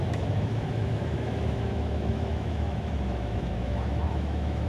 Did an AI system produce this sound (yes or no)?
yes